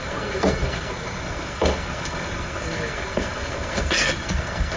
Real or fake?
fake